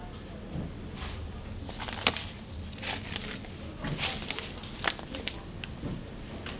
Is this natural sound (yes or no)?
yes